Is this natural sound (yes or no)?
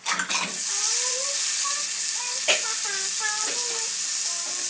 yes